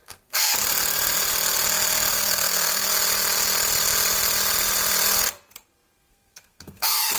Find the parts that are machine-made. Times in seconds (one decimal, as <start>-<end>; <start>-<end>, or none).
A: 0.0-0.5; 2.1-2.9; 6.1-7.2